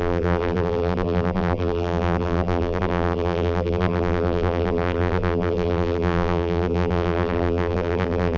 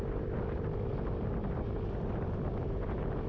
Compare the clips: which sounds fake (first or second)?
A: first